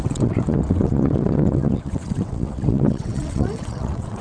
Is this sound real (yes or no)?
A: no